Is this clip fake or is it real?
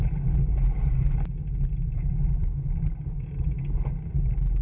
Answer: real